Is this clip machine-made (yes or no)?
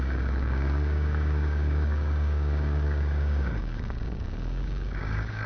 yes